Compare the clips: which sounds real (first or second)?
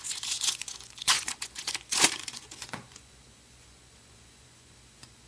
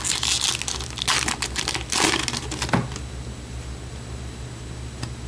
second